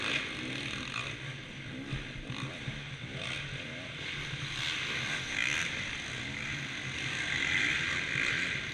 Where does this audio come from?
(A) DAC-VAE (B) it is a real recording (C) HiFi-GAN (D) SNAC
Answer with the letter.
B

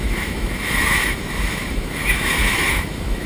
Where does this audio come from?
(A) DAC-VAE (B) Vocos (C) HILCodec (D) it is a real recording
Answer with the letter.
A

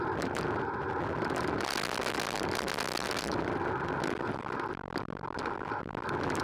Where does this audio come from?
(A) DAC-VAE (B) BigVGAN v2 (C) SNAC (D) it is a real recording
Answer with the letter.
D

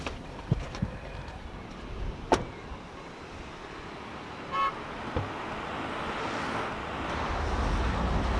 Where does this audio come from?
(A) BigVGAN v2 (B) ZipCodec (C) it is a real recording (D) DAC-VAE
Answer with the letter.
C